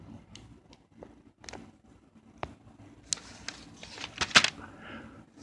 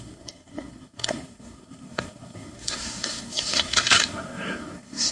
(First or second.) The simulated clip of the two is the second